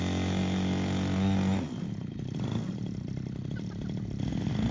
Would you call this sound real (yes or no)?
yes